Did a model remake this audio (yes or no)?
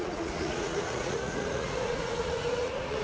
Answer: yes